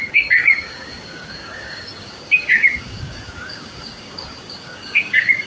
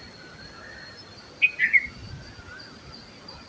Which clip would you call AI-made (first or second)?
first